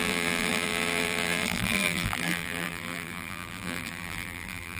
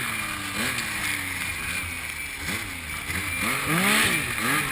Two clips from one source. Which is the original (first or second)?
second